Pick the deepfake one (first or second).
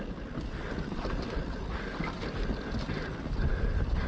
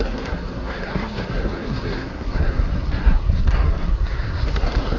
second